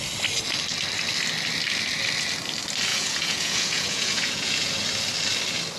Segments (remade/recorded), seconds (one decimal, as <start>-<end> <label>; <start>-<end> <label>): 0.0-2.9 recorded; 2.9-4.7 remade; 4.7-5.8 recorded